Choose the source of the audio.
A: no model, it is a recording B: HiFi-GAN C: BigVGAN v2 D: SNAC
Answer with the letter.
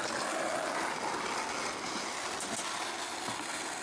A